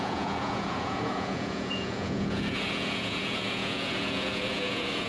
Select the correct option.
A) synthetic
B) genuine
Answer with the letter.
A